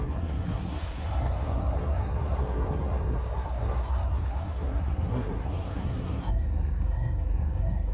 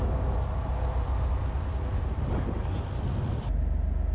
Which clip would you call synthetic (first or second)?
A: first